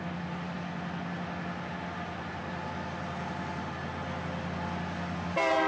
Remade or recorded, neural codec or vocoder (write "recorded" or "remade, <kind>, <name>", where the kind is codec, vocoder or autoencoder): recorded